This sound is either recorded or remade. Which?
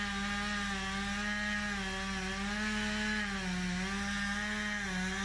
recorded